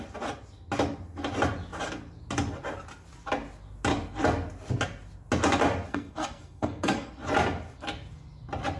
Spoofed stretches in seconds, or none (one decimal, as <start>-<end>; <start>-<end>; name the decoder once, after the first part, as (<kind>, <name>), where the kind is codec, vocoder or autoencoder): 5.9-7.1 (codec, SNAC)